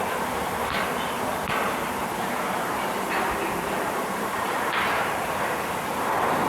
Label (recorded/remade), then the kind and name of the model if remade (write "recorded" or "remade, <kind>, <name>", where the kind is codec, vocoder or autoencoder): remade, vocoder, BigVGAN v2